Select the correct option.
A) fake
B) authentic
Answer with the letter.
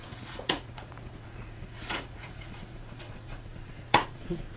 A